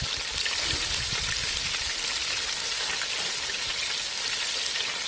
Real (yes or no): yes